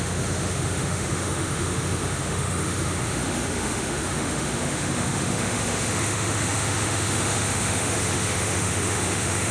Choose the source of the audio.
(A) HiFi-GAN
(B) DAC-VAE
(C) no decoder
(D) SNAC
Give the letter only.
B